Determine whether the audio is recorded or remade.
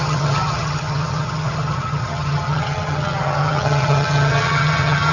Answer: remade